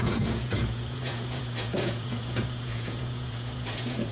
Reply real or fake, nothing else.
fake